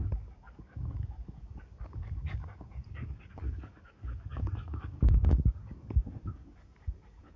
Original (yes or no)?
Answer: no